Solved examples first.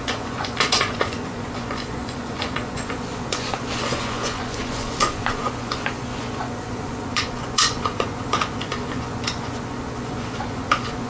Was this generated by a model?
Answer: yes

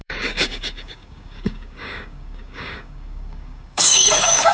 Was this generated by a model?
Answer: yes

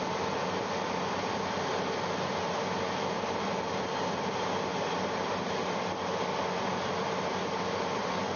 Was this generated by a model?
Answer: no